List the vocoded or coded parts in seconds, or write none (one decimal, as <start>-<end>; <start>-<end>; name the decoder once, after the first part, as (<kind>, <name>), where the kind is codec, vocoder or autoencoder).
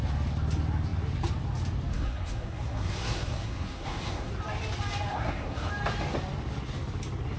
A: 1.9-4.3 (codec, SNAC); 5.1-5.7